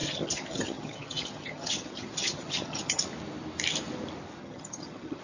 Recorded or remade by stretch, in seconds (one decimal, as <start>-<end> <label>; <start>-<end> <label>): 0.0-3.0 remade; 3.0-4.4 recorded; 4.4-5.2 remade

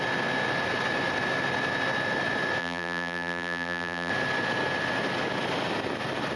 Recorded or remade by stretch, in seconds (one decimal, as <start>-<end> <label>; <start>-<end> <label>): 0.0-2.6 recorded; 2.6-4.1 remade; 4.1-6.4 recorded

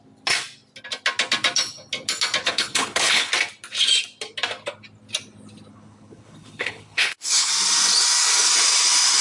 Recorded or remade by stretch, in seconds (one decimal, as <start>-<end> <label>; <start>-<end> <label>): 0.0-2.4 recorded; 2.4-3.3 remade; 3.3-5.7 recorded; 5.7-7.5 remade; 7.5-9.2 recorded

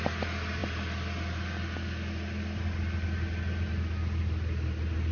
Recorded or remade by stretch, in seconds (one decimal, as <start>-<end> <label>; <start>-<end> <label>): 0.0-5.1 recorded